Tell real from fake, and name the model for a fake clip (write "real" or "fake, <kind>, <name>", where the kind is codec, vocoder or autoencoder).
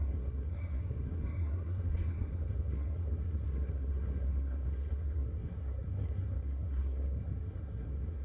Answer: fake, codec, SNAC